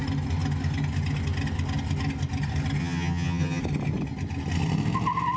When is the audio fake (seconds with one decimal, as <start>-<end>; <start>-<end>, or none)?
2.8-3.6